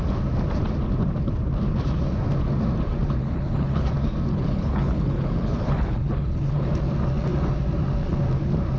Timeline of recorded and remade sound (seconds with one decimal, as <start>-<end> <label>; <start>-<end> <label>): 0.0-3.2 recorded; 3.2-3.9 remade; 3.9-4.3 recorded; 4.3-6.7 remade; 6.7-8.8 recorded